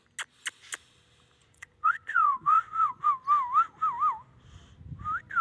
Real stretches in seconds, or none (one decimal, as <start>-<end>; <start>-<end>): 0.0-1.4; 3.1-5.4